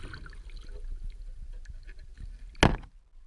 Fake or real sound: real